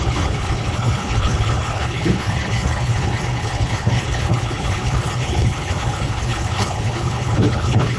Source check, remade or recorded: remade